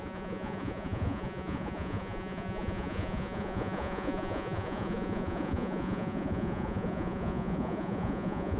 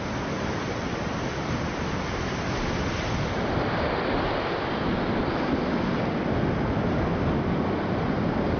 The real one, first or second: second